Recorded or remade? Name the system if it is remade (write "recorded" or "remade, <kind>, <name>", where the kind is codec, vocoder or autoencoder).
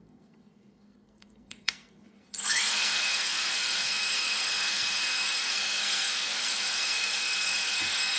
remade, codec, SNAC